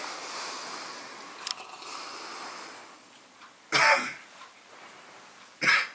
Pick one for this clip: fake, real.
real